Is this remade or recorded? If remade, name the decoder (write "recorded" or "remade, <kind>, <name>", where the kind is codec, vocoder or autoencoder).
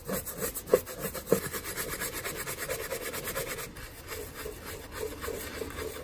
recorded